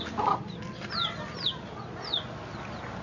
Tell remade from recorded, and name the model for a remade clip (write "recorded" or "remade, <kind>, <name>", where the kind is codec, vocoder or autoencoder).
recorded